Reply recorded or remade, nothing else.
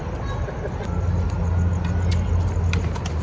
recorded